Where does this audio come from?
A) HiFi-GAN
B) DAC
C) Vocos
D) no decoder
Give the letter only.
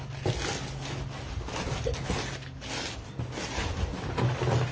D